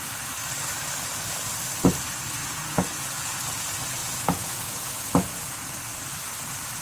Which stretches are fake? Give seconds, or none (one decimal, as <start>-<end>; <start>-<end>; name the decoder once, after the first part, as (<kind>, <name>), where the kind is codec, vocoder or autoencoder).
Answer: 2.4-3.4 (vocoder, Vocos); 4.0-5.8